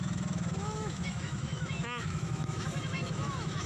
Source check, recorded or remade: remade